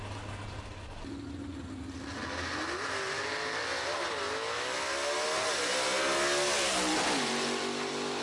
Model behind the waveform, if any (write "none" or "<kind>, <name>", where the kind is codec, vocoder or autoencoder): none